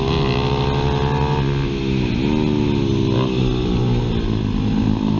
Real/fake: real